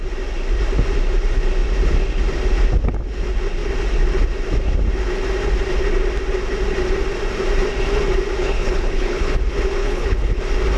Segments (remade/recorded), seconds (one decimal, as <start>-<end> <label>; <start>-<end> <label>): 0.0-8.4 recorded; 8.4-9.4 remade; 9.4-9.8 recorded; 9.8-10.4 remade; 10.4-10.8 recorded